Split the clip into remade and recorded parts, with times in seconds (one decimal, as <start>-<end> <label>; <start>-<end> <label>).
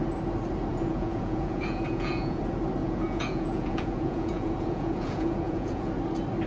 0.0-0.7 recorded; 0.7-2.4 remade; 2.4-2.8 recorded; 2.8-5.9 remade; 5.9-6.5 recorded